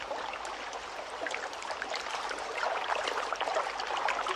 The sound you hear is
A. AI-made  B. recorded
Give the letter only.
B